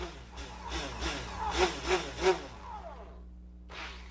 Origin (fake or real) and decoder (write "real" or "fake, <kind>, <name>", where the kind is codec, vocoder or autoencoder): real